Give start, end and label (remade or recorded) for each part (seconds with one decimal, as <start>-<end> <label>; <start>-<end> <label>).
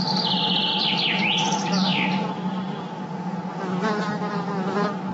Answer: 0.0-3.4 recorded; 3.4-4.0 remade; 4.0-5.1 recorded